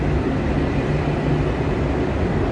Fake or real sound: real